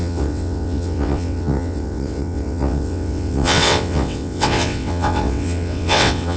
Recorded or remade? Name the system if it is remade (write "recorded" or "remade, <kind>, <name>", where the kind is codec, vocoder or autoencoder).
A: remade, vocoder, WaveNeXt